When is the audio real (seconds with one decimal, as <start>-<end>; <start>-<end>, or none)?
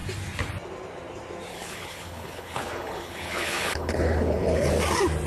0.0-1.5; 4.7-5.3